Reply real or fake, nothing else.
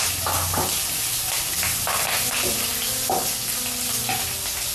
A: real